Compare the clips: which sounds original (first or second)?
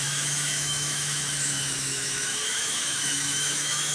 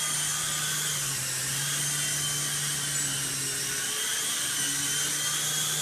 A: second